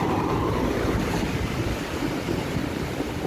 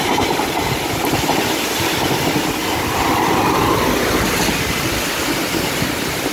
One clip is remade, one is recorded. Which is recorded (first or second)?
second